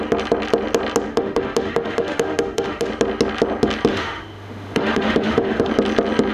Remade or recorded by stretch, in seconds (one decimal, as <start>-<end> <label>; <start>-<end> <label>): 0.0-1.1 recorded; 1.1-2.9 remade; 2.9-3.9 recorded; 3.9-5.7 remade; 5.7-6.3 recorded